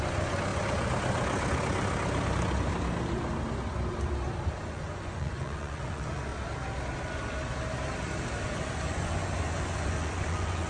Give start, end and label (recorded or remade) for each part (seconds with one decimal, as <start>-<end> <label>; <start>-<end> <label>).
0.0-0.5 remade; 0.5-4.6 recorded; 4.6-6.3 remade; 6.3-8.4 recorded; 8.4-10.7 remade